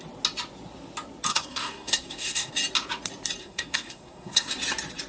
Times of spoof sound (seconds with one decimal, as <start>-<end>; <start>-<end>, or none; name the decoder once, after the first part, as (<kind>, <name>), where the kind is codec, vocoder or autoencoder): 1.3-2.5 (codec, SNAC); 3.4-4.5